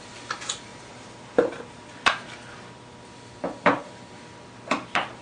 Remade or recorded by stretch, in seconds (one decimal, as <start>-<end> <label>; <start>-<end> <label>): 0.0-0.7 recorded; 0.7-1.9 remade; 1.9-5.2 recorded

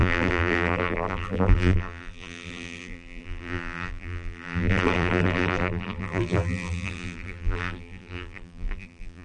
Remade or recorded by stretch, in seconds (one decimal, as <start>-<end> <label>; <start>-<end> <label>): 0.0-9.2 remade

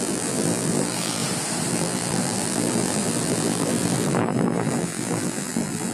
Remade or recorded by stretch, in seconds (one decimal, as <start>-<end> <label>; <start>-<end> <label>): 0.0-1.2 remade; 1.2-1.7 recorded; 1.7-5.9 remade

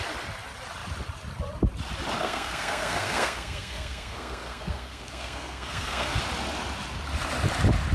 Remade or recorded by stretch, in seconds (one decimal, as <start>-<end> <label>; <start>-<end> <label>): 0.0-2.2 recorded; 2.2-6.2 remade; 6.2-7.9 recorded

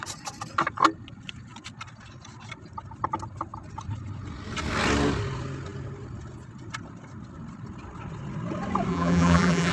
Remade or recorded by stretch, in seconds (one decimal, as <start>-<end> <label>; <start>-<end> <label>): 0.0-8.9 recorded; 8.9-9.7 remade